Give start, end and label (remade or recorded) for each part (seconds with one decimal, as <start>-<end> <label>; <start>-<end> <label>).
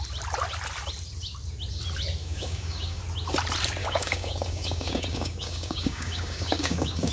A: 0.0-2.2 recorded; 2.2-3.0 remade; 3.0-3.8 recorded; 3.8-7.1 remade